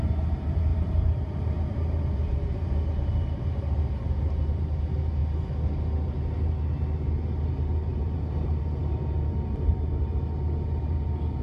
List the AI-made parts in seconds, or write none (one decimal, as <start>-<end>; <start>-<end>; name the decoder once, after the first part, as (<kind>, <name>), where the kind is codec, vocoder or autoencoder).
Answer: 0.7-4.3 (vocoder, BigVGAN v2); 7.9-8.5